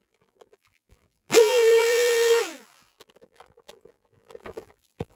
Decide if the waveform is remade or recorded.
remade